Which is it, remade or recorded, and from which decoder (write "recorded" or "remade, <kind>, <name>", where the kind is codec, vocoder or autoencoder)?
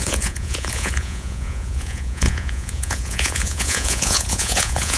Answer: remade, vocoder, Vocos